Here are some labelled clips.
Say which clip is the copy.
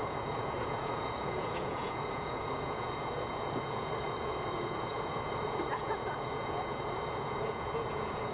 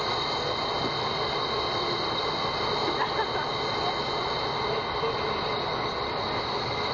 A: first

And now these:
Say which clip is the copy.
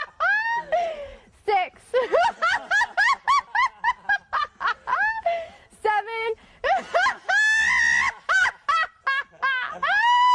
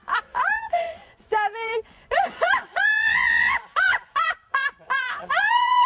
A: second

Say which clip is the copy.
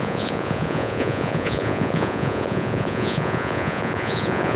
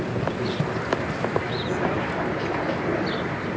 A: first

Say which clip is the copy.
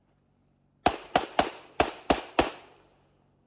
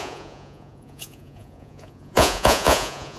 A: second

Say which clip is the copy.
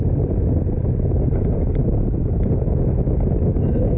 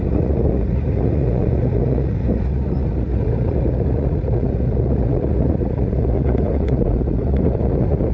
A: second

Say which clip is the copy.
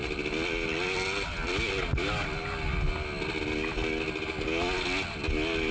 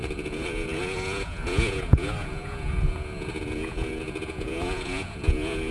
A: second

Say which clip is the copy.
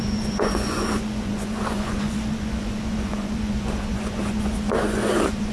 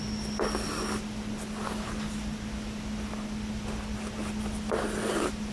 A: first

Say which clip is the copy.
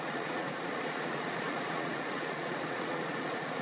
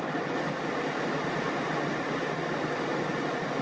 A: first